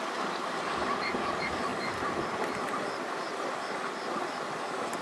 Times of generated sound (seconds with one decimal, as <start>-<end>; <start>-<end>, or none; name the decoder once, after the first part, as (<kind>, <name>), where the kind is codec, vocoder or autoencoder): none